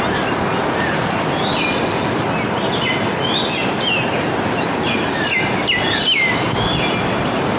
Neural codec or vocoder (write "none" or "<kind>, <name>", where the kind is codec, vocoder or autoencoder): none